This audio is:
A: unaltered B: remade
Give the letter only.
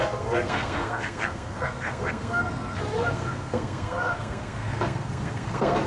B